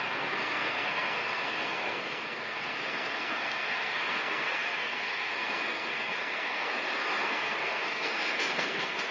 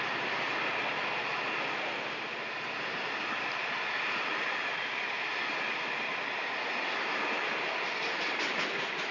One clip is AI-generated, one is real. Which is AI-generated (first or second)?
first